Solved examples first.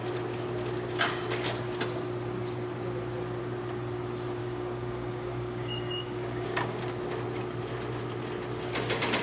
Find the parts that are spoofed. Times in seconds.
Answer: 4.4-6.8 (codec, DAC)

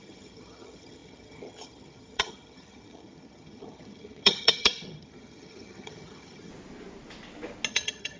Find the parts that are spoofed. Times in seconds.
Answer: 0.0-6.5 (vocoder, HiFi-GAN); 7.7-8.2

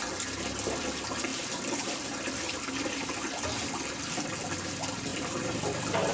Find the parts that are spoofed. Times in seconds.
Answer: 1.3-2.4 (vocoder, BigVGAN v2); 5.1-6.1